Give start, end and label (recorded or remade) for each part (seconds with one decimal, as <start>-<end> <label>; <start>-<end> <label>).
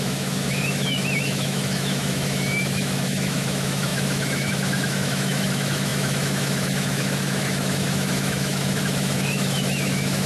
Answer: 0.0-10.3 remade